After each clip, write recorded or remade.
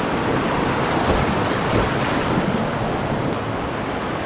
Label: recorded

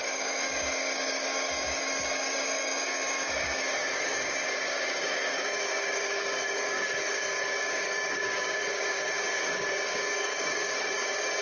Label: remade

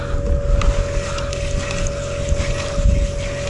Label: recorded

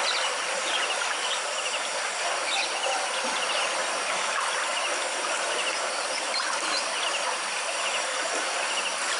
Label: recorded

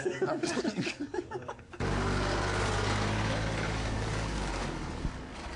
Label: remade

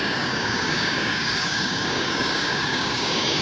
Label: remade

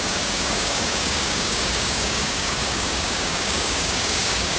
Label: remade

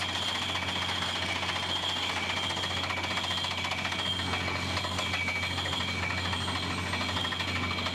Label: recorded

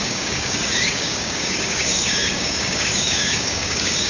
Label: remade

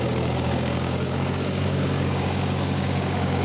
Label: remade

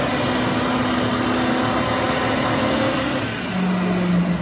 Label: recorded